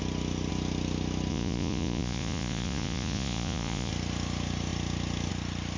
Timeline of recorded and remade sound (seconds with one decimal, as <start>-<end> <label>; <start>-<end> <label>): 0.0-1.3 recorded; 1.3-3.9 remade; 3.9-5.8 recorded